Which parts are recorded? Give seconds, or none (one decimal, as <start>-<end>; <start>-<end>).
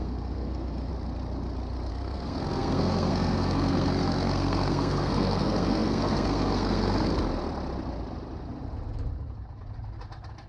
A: 0.9-1.9; 7.1-10.5